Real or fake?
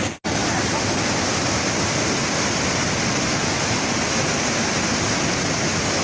real